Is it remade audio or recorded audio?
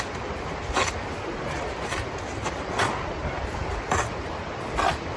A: recorded